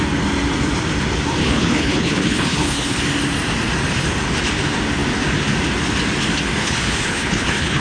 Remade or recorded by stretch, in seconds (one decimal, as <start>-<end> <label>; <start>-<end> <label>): 0.0-1.4 recorded; 1.4-3.0 remade; 3.0-6.6 recorded; 6.6-7.8 remade